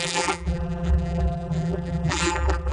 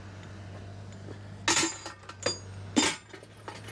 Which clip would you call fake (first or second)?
first